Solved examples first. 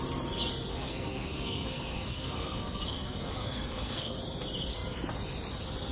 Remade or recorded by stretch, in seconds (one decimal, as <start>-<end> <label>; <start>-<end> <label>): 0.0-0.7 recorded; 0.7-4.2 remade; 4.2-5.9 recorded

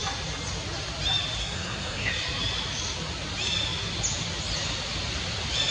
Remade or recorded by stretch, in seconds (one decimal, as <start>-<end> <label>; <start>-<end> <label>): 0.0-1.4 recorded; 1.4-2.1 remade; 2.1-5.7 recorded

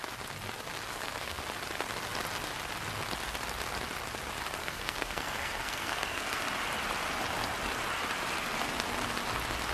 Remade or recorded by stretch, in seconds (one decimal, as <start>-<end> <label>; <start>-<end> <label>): 0.0-0.9 recorded; 0.9-1.4 remade; 1.4-4.6 recorded; 4.6-6.4 remade; 6.4-9.7 recorded

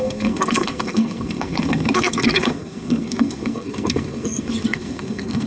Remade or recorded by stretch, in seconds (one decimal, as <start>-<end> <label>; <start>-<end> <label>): 0.0-5.5 remade

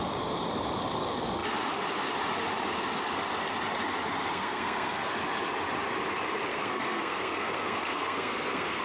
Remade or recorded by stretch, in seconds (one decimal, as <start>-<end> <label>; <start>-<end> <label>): 0.0-4.3 recorded; 4.3-5.1 remade; 5.1-6.5 recorded; 6.5-8.8 remade